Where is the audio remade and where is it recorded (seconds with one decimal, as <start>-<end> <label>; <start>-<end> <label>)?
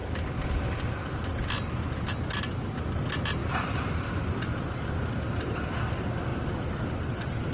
0.0-1.2 remade; 1.2-3.4 recorded; 3.4-5.2 remade; 5.2-7.5 recorded